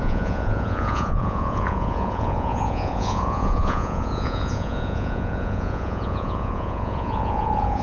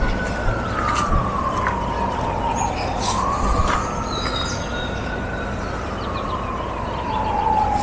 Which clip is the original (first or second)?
second